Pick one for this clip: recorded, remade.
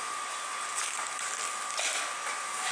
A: recorded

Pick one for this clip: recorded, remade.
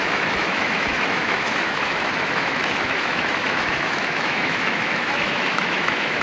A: remade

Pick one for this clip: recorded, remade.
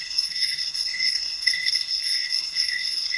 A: remade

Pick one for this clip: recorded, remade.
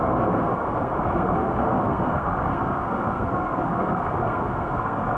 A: remade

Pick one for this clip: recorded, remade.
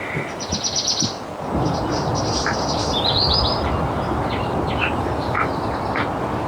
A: recorded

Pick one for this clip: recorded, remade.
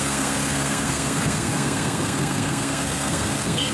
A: remade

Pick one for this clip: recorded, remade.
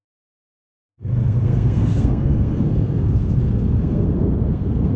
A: remade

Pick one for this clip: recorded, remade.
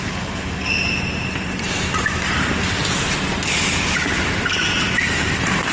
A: recorded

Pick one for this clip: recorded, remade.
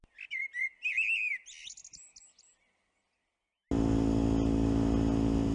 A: recorded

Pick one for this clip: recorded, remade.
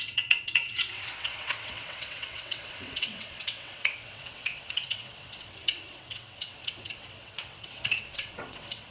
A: remade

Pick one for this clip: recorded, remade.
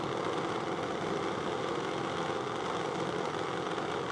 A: recorded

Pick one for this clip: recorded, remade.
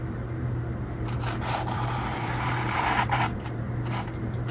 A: remade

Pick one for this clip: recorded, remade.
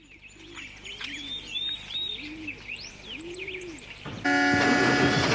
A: recorded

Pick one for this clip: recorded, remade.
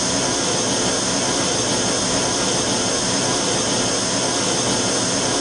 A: recorded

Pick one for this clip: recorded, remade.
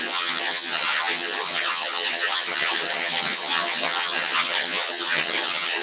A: remade